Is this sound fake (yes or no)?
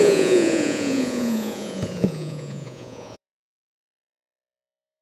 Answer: yes